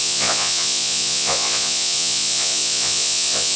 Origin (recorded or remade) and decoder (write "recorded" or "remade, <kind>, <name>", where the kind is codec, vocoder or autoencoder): remade, vocoder, Vocos